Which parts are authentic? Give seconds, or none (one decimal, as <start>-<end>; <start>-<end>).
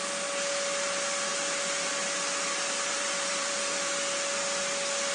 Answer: 0.0-2.9; 3.5-5.1